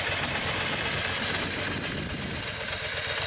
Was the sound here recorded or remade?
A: recorded